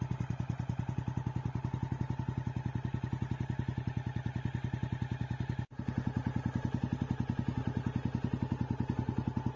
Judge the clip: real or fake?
real